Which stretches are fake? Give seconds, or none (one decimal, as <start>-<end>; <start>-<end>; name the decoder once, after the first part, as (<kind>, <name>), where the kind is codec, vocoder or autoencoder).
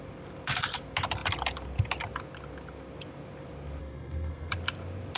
3.8-4.5 (codec, SNAC)